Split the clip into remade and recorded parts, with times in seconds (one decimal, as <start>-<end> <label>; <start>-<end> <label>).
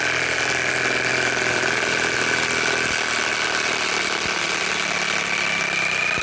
0.0-1.1 recorded; 1.1-4.6 remade; 4.6-6.2 recorded